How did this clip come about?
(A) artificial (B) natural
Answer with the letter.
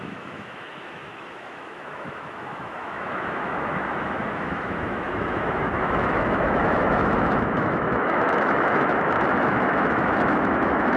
A